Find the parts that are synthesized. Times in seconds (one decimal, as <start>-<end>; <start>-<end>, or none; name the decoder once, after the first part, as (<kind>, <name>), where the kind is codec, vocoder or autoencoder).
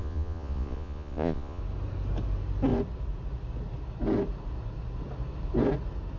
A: 0.0-1.6 (vocoder, Vocos)